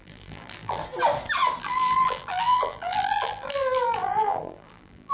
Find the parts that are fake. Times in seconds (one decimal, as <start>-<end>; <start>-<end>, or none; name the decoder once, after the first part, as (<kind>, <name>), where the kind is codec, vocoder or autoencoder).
0.0-0.8 (vocoder, BigVGAN v2); 1.6-5.1